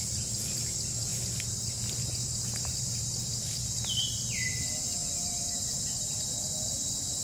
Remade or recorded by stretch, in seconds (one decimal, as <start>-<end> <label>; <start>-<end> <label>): 0.0-7.2 recorded